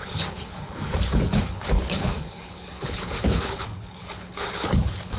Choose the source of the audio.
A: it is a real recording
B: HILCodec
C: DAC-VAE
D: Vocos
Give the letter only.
B